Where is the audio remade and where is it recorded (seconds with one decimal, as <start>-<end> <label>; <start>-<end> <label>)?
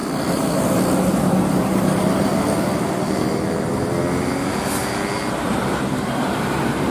0.0-1.5 recorded; 1.5-2.3 remade; 2.3-5.3 recorded; 5.3-6.9 remade